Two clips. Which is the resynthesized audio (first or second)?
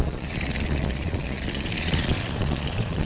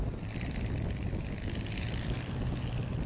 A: first